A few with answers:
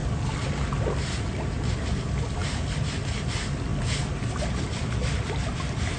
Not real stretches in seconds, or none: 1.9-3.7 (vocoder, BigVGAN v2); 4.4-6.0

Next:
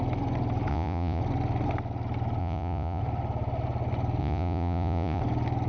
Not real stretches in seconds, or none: 0.7-1.2 (vocoder, Vocos); 2.4-3.0; 4.2-5.2